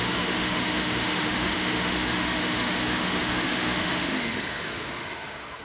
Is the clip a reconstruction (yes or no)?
yes